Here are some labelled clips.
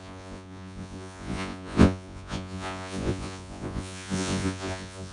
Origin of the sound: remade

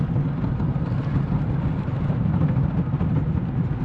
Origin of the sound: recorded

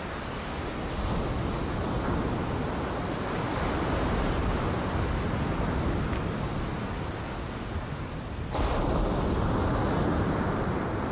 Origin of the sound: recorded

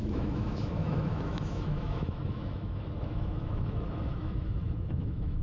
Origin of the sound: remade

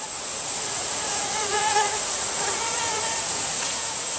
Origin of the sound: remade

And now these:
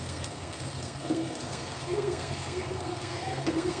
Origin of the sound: remade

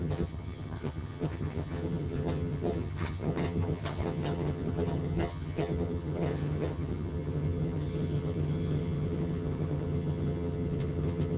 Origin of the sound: remade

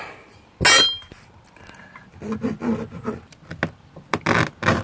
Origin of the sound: recorded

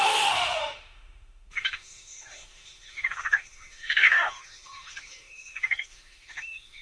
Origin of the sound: remade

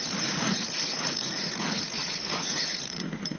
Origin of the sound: remade